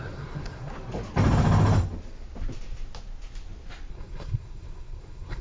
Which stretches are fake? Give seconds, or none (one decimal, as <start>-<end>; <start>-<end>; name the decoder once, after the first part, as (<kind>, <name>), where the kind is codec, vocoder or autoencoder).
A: 0.0-0.7 (codec, SNAC); 3.9-5.4